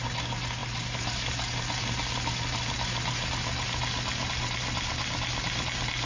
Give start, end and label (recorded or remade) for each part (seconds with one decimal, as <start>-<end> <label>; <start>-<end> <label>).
0.0-6.1 recorded